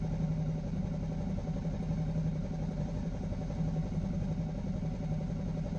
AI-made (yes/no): no